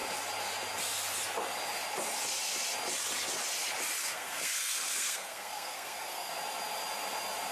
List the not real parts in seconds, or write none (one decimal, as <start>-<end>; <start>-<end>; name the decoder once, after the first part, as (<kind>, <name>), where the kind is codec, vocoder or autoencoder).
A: 4.0-6.3 (codec, SNAC)